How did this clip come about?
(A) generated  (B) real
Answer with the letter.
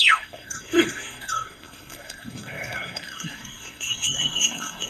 A